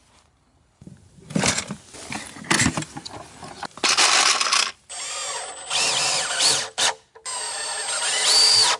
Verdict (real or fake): real